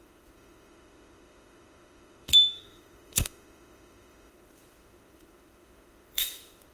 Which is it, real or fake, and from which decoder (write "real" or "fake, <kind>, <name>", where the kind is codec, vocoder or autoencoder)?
fake, autoencoder, DAC-VAE